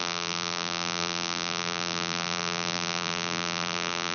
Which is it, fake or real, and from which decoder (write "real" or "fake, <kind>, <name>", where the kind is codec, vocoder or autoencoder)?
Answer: fake, vocoder, BigVGAN v2